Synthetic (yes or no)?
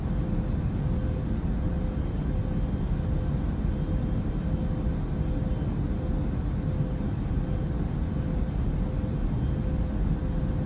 no